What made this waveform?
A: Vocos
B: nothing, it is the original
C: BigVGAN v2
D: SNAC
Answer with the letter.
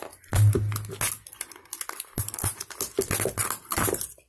B